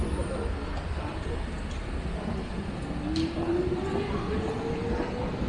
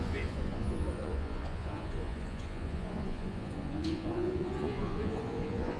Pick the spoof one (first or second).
second